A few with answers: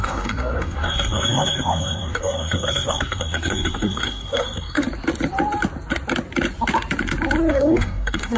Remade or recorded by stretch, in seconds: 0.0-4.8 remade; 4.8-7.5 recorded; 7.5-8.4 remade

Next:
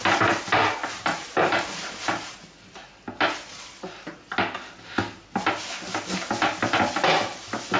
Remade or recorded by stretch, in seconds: 0.0-0.8 recorded; 0.8-2.3 remade; 2.3-7.8 recorded